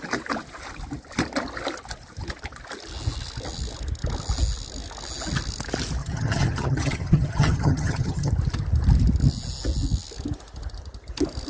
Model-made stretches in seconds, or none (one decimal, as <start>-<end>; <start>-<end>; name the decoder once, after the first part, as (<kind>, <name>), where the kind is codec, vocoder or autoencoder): 6.0-8.3 (vocoder, HiFi-GAN)